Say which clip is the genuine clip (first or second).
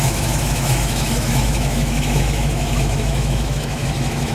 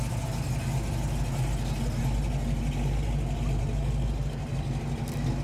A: second